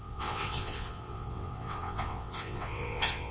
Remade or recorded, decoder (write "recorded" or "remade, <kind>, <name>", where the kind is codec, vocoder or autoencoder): remade, vocoder, WaveNeXt